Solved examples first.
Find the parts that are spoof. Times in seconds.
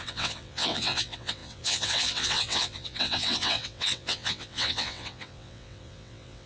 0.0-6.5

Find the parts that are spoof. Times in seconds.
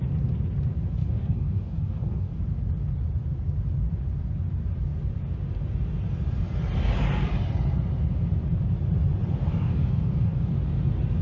1.0-2.4; 9.5-10.5